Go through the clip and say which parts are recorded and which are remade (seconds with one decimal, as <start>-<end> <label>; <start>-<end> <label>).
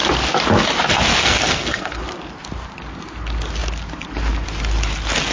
0.0-1.2 recorded; 1.2-2.0 remade; 2.0-5.3 recorded